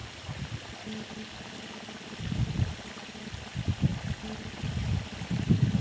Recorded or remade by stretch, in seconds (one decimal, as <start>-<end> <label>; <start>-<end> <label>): 0.0-5.8 recorded